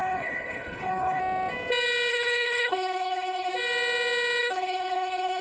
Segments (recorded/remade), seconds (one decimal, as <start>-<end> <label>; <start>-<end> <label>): 0.0-1.2 remade; 1.2-2.1 recorded; 2.1-3.5 remade; 3.5-4.4 recorded; 4.4-5.4 remade